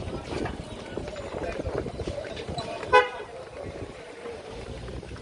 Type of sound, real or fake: fake